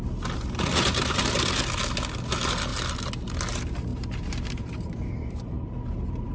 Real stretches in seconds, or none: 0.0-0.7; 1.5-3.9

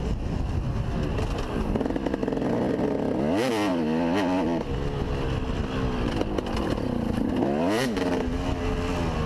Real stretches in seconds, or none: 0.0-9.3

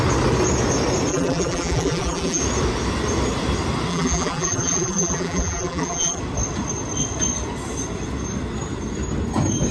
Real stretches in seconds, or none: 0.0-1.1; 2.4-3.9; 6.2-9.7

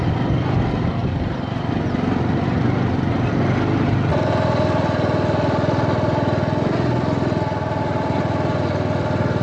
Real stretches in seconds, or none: 0.0-1.0; 1.7-9.4

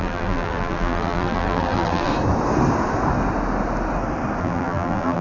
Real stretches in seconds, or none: 2.1-4.4

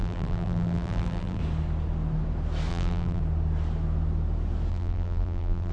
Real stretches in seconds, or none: 1.4-2.7; 3.2-4.7

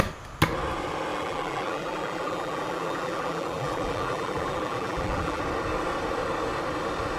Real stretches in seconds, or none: 0.0-1.1; 5.4-7.2

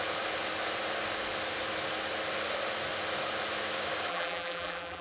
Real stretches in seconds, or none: 0.0-4.1